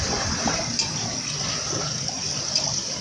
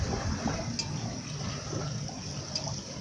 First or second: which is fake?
first